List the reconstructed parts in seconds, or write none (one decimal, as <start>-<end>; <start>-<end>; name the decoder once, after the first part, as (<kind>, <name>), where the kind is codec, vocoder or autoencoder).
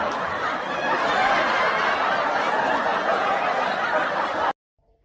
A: 2.9-3.4 (vocoder, Vocos)